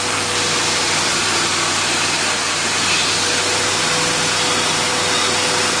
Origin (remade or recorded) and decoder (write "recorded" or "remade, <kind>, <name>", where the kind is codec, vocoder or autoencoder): recorded